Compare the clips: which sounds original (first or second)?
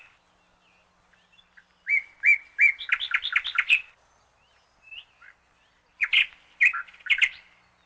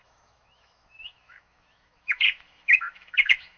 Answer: first